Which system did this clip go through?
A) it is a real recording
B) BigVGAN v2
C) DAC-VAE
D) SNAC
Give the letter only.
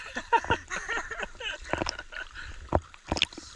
A